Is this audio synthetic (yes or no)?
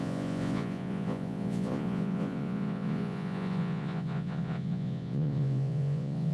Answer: yes